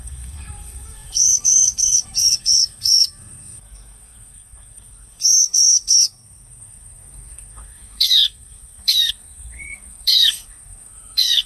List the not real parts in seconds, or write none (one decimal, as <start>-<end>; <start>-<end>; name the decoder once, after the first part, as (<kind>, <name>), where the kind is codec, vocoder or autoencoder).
0.0-11.5 (codec, SNAC)